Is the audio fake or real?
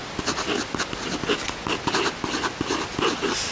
real